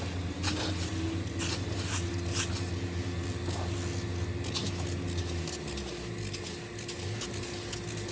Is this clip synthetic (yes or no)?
no